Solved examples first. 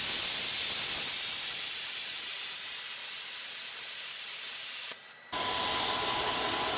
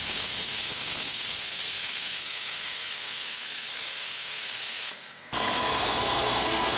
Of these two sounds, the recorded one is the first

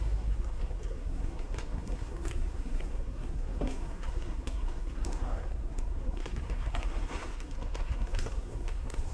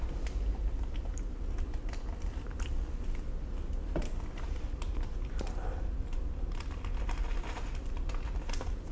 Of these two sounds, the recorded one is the second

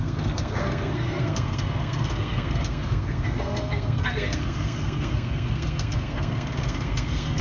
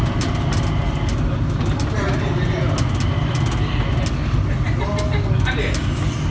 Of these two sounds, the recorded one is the second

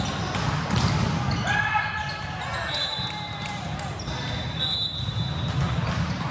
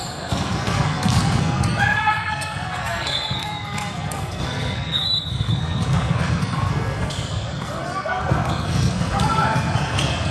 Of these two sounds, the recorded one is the first